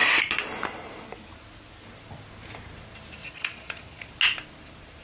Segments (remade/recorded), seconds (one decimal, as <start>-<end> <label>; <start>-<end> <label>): 0.0-3.2 recorded; 3.2-4.1 remade; 4.1-5.0 recorded